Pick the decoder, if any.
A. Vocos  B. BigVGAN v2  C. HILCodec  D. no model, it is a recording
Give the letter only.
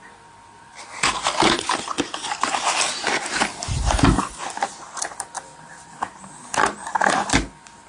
D